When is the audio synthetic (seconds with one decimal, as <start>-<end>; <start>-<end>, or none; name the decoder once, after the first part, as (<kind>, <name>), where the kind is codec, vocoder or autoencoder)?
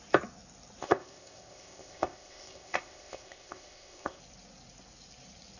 0.8-4.2 (codec, ZipCodec)